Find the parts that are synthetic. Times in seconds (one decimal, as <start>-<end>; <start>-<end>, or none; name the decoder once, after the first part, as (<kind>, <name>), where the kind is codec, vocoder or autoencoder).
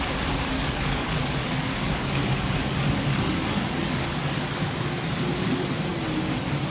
0.5-4.5 (codec, DAC)